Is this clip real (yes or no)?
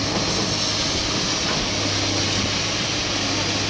yes